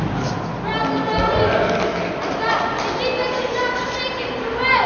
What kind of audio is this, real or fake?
real